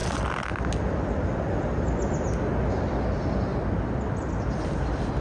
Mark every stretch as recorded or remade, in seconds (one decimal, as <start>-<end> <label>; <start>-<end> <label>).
0.0-5.2 recorded